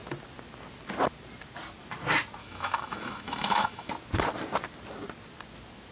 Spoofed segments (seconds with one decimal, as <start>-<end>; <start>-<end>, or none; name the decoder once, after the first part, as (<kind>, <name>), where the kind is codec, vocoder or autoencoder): 2.4-3.9 (autoencoder, DAC-VAE)

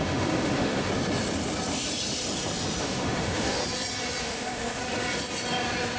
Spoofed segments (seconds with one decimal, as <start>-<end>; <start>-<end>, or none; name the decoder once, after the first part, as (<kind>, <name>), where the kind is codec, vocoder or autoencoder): 0.0-0.9 (autoencoder, DAC-VAE); 2.8-3.6; 4.2-4.8

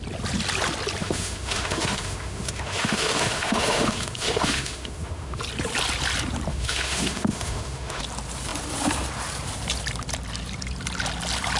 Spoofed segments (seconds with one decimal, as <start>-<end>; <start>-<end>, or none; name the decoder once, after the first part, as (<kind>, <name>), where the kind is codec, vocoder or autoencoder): 1.0-5.4 (autoencoder, DAC-VAE); 6.5-8.0

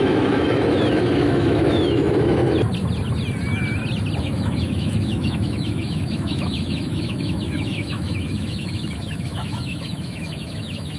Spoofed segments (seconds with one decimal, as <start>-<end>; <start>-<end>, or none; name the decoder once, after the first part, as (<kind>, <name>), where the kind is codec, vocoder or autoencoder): 0.0-2.4 (autoencoder, DAC-VAE); 4.2-11.0

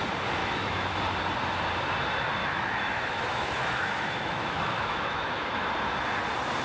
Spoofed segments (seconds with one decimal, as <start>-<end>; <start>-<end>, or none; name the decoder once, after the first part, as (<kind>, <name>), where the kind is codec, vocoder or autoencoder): 0.4-1.0 (autoencoder, DAC-VAE); 2.4-5.7

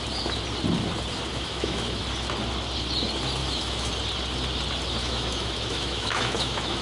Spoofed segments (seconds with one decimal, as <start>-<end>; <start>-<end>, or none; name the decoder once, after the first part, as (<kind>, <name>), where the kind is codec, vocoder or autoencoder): 1.3-2.0 (autoencoder, DAC-VAE); 3.4-3.9; 5.0-6.8